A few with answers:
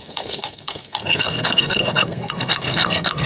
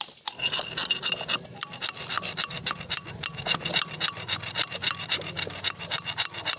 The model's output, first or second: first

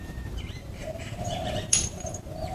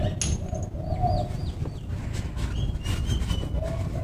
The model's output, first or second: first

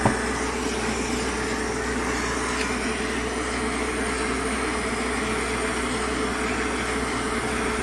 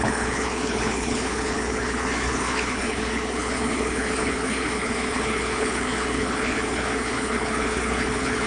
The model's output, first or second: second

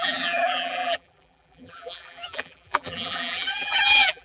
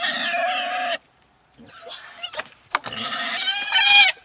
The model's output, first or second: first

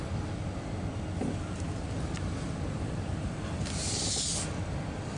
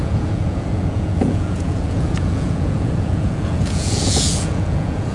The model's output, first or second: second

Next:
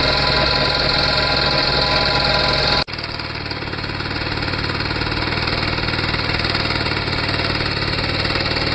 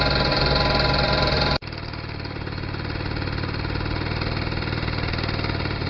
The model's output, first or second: second